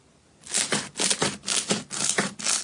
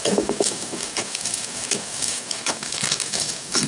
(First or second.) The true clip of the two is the first